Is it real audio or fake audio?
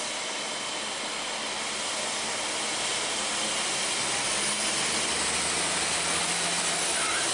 real